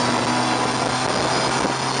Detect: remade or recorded recorded